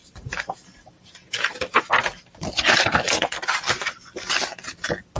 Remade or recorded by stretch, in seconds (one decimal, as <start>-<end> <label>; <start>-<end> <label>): 0.0-1.8 remade; 1.8-5.2 recorded